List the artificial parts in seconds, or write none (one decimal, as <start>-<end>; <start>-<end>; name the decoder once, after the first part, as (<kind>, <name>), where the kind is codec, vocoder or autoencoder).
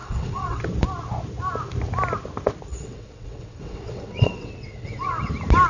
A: 0.0-0.6 (vocoder, WaveNeXt); 2.7-5.3